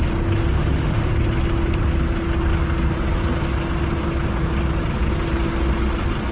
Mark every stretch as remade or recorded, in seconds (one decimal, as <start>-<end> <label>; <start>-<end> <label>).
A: 0.0-0.5 recorded; 0.5-1.1 remade; 1.1-6.3 recorded